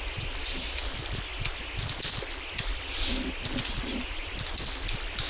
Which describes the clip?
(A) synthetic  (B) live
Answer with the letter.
B